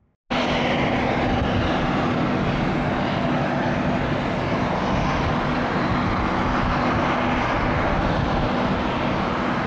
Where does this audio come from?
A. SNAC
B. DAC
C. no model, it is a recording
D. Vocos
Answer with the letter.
C